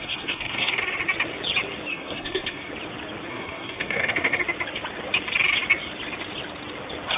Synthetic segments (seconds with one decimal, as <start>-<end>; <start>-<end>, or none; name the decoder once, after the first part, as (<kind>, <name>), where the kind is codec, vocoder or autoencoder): 0.0-0.8 (codec, SNAC); 1.9-2.7; 3.3-4.4